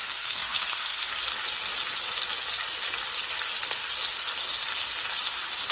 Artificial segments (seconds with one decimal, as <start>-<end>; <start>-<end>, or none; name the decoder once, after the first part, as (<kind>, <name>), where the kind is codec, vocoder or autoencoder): 0.0-1.2 (codec, SNAC)